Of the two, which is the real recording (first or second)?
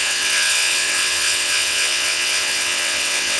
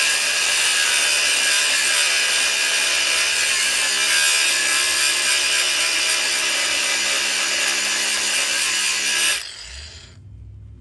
second